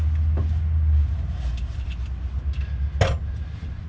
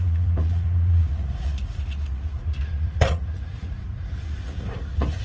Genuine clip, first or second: first